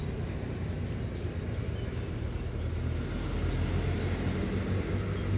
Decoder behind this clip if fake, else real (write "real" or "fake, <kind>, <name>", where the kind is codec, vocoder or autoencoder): real